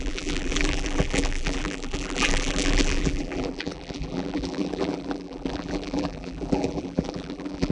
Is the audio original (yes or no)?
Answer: no